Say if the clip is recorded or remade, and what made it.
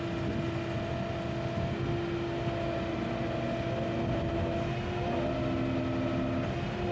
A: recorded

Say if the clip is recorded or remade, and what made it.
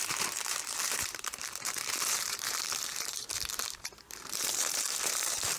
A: remade, vocoder, BigVGAN v2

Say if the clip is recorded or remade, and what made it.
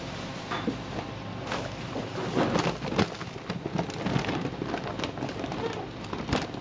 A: recorded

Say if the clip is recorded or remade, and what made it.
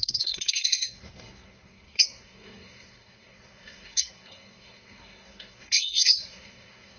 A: remade, codec, SNAC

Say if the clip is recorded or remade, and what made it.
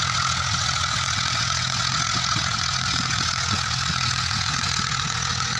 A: remade, vocoder, WaveNeXt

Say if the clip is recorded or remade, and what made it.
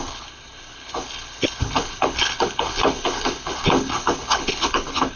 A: remade, codec, HILCodec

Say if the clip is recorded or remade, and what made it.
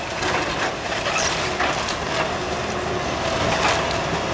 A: recorded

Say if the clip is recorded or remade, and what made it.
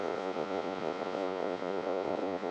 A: remade, vocoder, Vocos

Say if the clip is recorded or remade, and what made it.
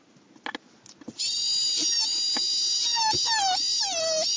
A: recorded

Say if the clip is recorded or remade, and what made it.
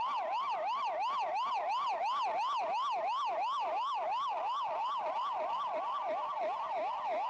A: recorded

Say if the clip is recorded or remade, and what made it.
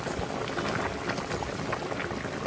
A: recorded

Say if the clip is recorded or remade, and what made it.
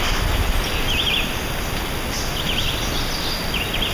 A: recorded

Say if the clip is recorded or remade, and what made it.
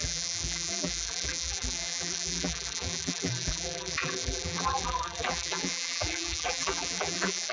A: remade, vocoder, BigVGAN v2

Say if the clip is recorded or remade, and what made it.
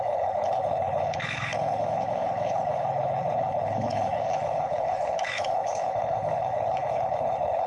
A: remade, codec, HILCodec